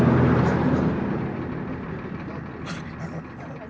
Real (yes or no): yes